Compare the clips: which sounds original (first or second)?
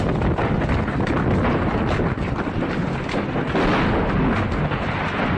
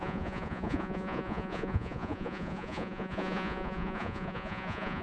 first